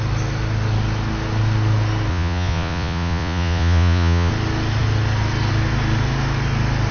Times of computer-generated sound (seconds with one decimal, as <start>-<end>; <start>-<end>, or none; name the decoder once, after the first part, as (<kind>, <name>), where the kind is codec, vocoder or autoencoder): 2.1-4.3 (vocoder, Vocos)